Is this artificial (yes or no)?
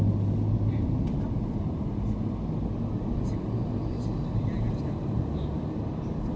no